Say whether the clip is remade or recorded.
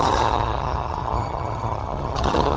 remade